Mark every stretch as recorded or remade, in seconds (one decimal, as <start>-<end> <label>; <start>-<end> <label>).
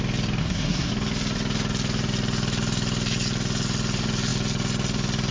0.0-0.4 recorded; 0.4-0.9 remade; 0.9-5.3 recorded